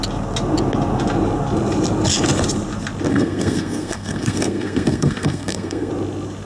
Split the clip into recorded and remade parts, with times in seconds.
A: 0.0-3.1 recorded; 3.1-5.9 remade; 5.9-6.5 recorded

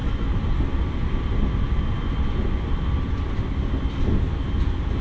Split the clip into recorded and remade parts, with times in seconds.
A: 0.0-5.0 recorded